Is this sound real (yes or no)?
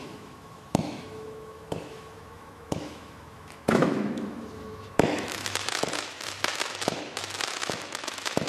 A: no